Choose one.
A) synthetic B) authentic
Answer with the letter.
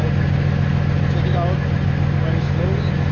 B